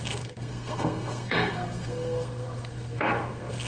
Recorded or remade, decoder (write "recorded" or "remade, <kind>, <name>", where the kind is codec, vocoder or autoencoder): remade, codec, SNAC